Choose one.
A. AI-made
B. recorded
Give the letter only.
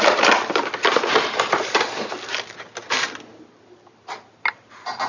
B